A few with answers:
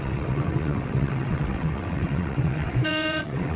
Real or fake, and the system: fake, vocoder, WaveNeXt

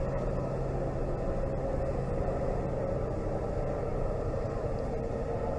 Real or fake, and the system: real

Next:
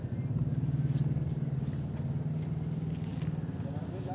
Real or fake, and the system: real